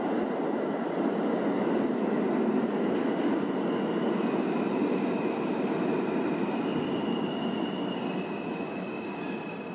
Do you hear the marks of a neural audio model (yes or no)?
no